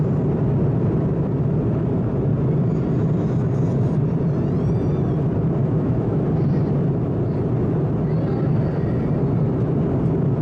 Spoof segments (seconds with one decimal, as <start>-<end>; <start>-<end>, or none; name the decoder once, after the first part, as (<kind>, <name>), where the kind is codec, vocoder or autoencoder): 5.6-6.2 (autoencoder, DAC-VAE)